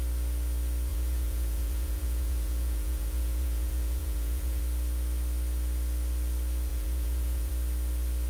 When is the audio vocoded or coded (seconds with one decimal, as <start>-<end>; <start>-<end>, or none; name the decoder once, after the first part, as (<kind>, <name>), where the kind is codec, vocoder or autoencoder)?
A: 0.9-4.6 (vocoder, Vocos); 6.7-7.5

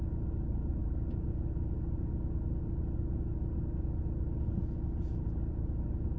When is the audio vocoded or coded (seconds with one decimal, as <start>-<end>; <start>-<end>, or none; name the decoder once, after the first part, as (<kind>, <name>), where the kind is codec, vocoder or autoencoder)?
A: none

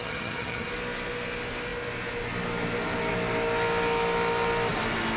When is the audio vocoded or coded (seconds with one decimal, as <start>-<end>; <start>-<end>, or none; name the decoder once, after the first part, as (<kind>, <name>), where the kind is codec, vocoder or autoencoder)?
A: 0.0-0.7 (vocoder, HiFi-GAN)

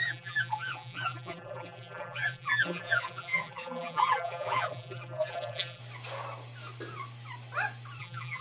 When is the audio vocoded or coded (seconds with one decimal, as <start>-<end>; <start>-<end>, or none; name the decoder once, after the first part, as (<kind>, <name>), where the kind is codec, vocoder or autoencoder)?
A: 0.0-5.8 (vocoder, BigVGAN v2); 8.0-8.4

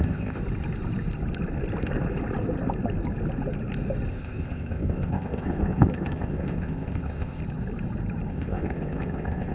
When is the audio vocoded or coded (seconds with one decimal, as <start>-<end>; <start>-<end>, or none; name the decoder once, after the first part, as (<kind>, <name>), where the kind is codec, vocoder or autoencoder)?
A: 0.0-0.4 (codec, ZipCodec); 4.1-7.4; 8.3-9.5

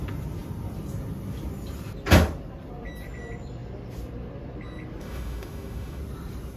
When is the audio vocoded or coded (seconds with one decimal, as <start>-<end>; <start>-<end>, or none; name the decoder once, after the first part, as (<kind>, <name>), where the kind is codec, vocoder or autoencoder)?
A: 5.0-6.0 (autoencoder, DAC-VAE)